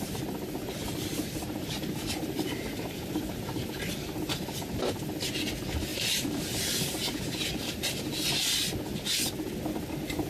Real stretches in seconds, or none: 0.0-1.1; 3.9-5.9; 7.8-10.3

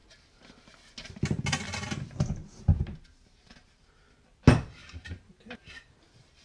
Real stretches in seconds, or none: 0.0-2.7; 3.9-4.8; 5.9-6.4

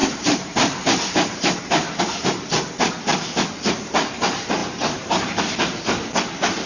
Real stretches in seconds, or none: 2.0-4.6; 5.4-6.7

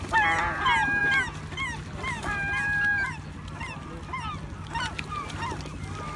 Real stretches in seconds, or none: 0.0-6.2

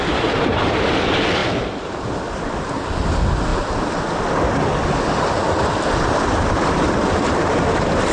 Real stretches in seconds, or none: 0.0-1.4; 3.0-5.4

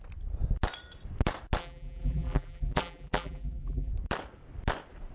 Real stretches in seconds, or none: 0.0-1.6; 3.9-5.1

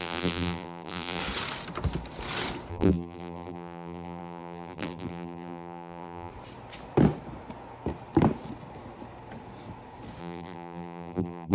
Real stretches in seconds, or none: 1.2-2.7; 6.3-10.2

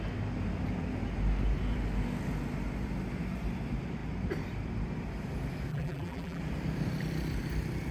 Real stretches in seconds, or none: 0.0-5.7; 6.4-7.9